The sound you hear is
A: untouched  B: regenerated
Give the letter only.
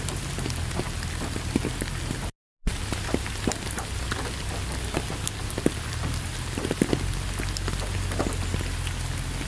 A